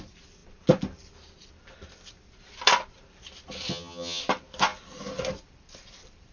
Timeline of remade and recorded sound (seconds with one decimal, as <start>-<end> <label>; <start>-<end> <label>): 0.0-3.7 recorded; 3.7-4.2 remade; 4.2-6.3 recorded